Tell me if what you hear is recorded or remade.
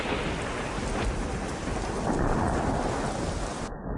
recorded